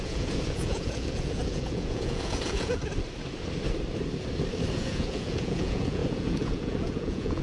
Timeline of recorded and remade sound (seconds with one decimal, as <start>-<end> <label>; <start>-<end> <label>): 0.0-2.8 remade; 2.8-4.7 recorded; 4.7-7.4 remade